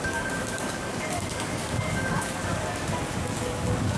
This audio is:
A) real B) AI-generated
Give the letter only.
B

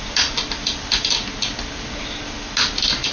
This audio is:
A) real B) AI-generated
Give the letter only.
A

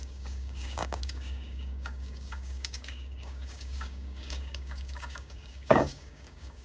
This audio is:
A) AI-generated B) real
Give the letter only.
A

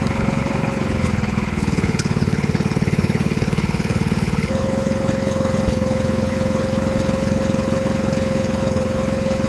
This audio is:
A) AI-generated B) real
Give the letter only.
A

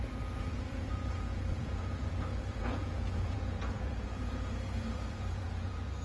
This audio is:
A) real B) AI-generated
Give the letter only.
B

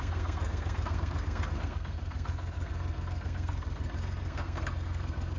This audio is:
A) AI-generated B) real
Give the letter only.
A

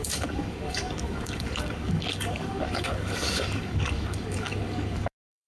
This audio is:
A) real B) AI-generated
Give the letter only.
B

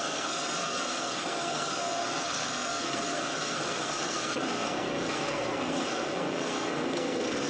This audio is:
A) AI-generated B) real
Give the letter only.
A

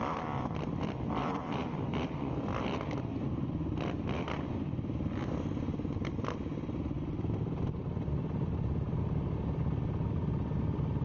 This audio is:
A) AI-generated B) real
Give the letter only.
A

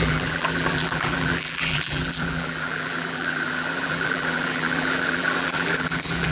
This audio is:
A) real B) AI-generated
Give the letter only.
B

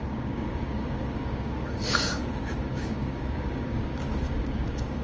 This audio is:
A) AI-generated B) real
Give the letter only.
A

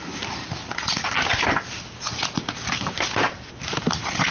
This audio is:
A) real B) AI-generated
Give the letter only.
A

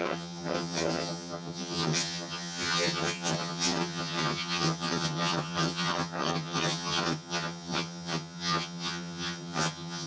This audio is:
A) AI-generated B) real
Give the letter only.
A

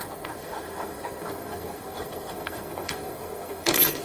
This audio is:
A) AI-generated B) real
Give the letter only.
A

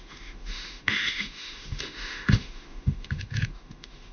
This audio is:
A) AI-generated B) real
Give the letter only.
A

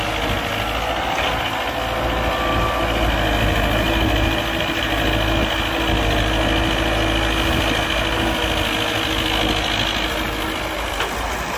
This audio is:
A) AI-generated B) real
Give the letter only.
B